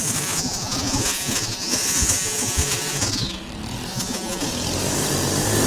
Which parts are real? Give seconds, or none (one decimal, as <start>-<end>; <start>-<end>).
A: 3.4-3.9; 4.5-5.7